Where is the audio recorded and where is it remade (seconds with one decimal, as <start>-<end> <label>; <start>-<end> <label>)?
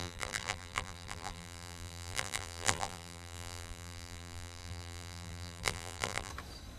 0.0-6.3 remade; 6.3-6.8 recorded